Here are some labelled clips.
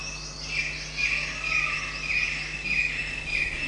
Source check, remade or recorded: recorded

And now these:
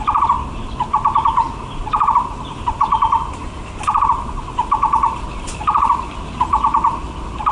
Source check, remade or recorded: recorded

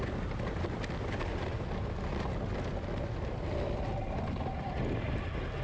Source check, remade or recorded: recorded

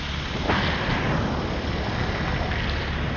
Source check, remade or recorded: recorded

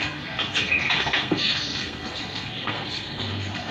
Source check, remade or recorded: remade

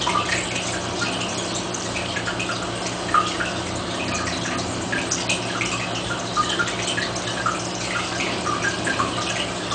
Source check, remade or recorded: recorded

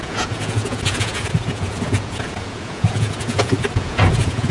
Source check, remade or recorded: remade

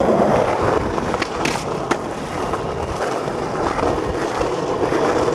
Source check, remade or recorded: remade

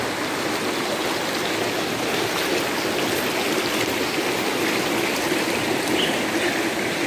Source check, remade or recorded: recorded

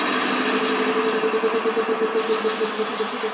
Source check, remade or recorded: recorded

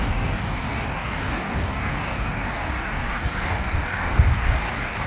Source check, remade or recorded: remade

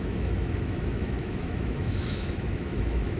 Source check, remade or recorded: remade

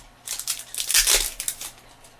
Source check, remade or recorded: recorded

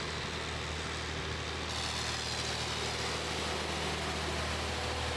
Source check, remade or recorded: recorded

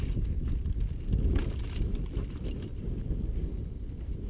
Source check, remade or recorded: recorded